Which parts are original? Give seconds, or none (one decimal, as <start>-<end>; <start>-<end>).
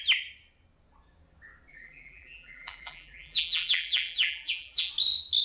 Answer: 0.0-1.7; 4.9-5.4